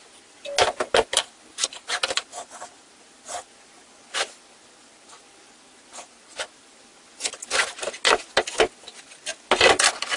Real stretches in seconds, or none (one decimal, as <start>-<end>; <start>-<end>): 0.0-10.2